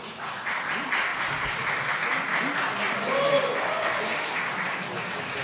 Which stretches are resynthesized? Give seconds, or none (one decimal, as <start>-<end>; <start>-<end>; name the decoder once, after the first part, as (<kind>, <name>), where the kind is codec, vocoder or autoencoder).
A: 3.7-4.5 (autoencoder, DAC-VAE)